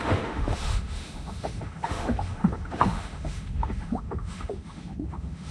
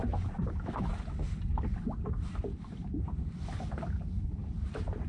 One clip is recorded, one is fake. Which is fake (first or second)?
first